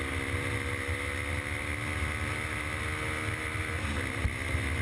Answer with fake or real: real